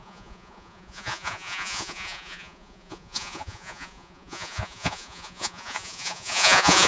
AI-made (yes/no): yes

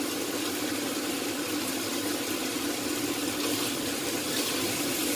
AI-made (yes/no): no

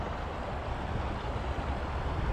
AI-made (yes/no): no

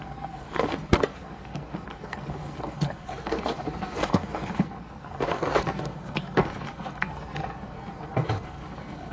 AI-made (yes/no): yes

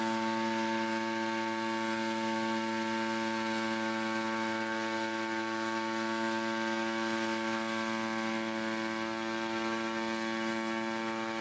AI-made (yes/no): no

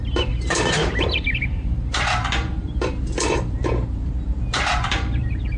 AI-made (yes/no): yes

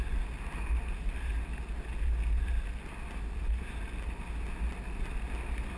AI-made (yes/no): no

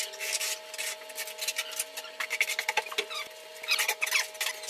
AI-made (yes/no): no